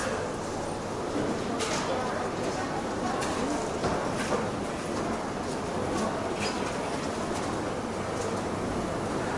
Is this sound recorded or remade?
recorded